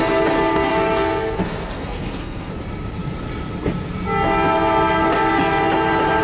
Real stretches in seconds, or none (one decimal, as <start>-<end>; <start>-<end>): 0.0-0.7; 2.5-6.2